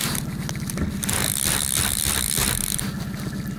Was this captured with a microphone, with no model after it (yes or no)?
yes